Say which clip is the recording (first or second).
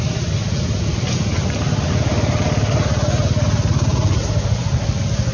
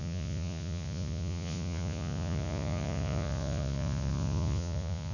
first